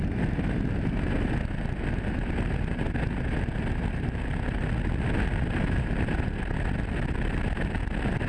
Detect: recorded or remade recorded